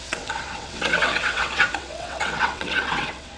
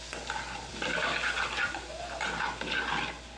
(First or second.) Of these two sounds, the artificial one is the first